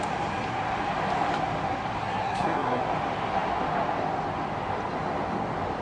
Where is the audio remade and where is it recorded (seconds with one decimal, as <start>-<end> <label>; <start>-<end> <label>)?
0.0-2.0 recorded; 2.0-2.8 remade; 2.8-5.8 recorded